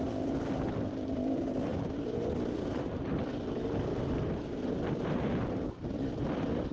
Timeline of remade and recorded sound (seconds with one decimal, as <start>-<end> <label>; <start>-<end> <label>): 0.0-6.7 recorded